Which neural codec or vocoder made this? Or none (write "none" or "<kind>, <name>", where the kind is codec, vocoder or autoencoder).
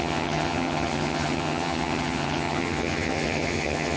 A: vocoder, HiFi-GAN